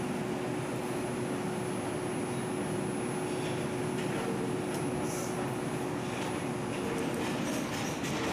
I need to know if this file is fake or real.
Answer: real